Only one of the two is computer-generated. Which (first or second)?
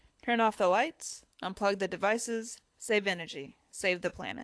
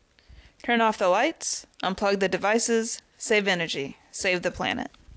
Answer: first